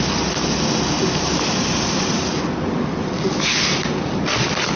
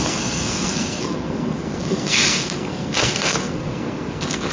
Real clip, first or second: first